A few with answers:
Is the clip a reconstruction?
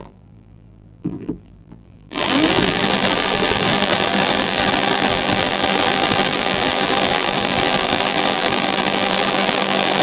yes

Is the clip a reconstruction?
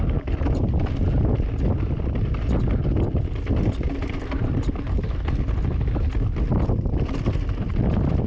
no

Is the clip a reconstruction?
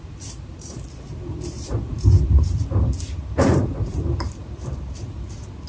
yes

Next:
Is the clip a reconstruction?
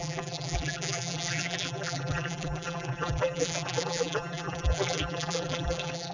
yes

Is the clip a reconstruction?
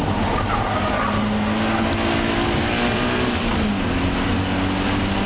no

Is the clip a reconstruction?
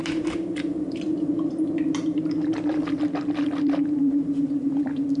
yes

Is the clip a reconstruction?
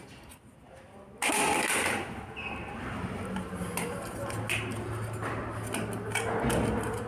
no